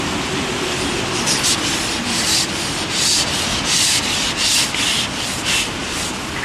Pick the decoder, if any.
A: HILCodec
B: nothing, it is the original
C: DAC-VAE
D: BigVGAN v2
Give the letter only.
B